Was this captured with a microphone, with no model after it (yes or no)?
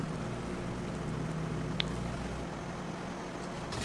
yes